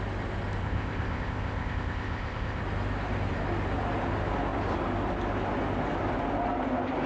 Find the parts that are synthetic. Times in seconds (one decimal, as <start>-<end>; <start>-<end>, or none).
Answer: 0.6-2.6